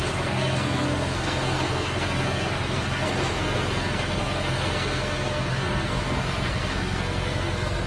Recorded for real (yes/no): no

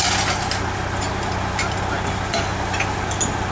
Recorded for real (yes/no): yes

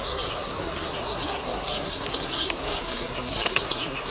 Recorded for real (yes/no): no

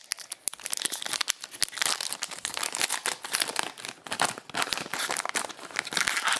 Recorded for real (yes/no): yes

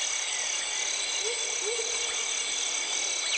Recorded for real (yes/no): yes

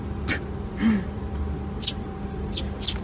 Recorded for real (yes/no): no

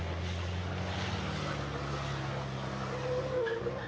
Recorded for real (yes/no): yes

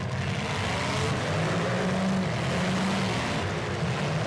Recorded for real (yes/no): yes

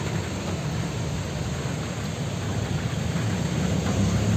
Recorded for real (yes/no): yes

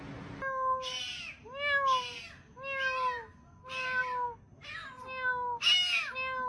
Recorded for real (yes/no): yes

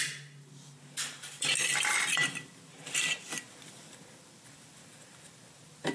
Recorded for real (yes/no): no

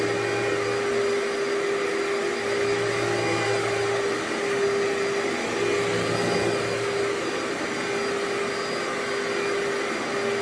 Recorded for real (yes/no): yes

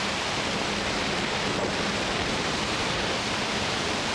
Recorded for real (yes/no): no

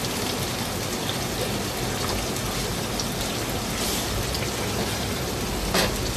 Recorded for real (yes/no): yes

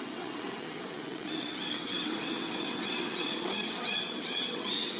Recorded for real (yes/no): no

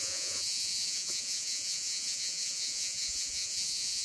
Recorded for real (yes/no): no